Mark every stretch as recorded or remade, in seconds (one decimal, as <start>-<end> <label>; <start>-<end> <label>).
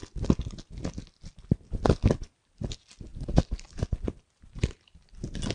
0.0-3.1 recorded; 3.1-5.1 remade; 5.1-5.5 recorded